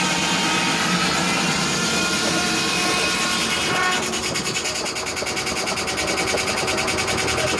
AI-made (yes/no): no